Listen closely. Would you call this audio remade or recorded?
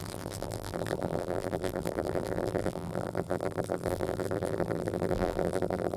remade